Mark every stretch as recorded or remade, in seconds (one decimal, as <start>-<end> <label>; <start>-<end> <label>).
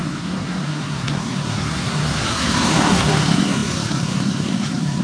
0.0-5.0 remade